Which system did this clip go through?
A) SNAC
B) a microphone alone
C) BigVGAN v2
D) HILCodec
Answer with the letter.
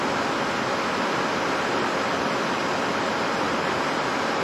B